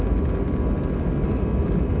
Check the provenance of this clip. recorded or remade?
recorded